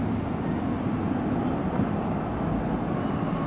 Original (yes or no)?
yes